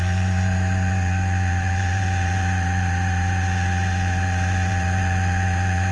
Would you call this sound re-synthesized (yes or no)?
yes